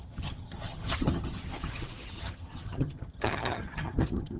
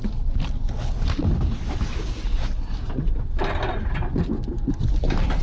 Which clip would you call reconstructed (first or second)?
first